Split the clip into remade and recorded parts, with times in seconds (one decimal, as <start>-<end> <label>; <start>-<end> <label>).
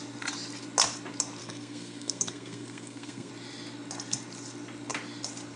0.0-1.4 recorded; 1.4-3.3 remade; 3.3-5.6 recorded